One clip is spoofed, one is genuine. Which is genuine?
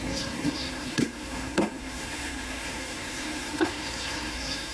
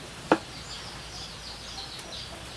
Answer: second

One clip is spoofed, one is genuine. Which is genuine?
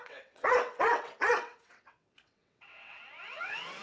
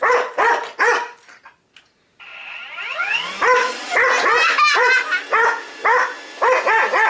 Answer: second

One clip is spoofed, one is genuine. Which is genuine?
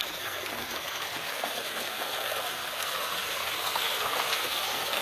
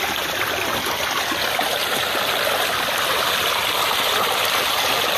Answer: second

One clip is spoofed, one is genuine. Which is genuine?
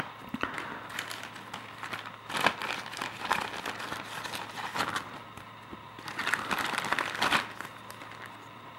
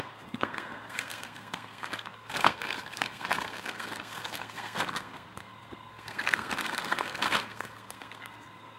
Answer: first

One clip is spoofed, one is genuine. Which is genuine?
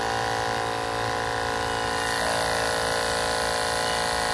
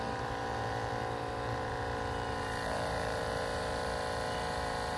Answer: first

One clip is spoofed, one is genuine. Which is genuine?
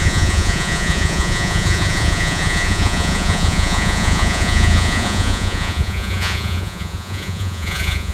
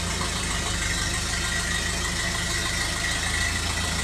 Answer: second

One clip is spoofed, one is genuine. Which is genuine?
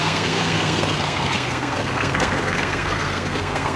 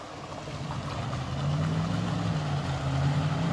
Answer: second